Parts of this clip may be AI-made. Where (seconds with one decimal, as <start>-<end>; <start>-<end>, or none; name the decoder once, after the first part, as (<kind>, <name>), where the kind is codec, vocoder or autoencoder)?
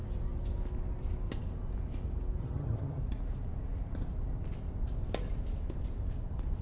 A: 2.4-3.0 (vocoder, HiFi-GAN)